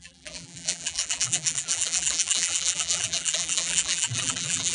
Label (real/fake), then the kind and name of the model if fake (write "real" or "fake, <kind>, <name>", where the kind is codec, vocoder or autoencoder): fake, vocoder, BigVGAN v2